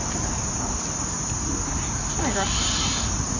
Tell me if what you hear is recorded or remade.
recorded